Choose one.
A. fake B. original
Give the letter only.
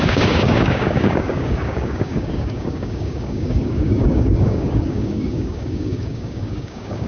A